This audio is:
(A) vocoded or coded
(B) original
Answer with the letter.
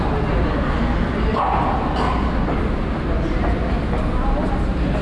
B